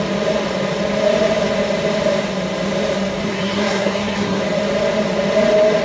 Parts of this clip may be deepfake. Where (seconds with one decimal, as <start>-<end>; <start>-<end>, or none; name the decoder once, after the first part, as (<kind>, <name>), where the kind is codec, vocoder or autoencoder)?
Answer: 3.2-4.4 (codec, SNAC)